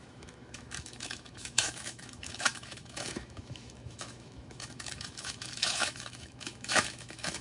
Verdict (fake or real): fake